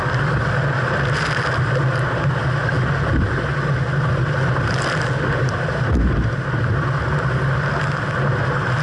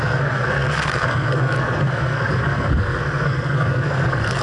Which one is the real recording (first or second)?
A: first